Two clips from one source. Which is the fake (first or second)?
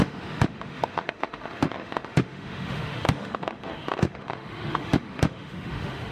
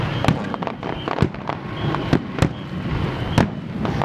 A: first